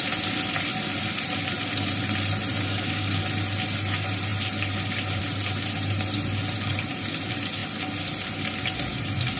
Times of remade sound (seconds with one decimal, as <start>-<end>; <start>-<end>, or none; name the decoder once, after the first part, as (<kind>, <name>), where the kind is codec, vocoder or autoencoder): 2.7-3.2 (codec, DAC)